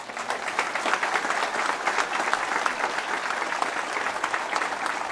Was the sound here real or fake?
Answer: real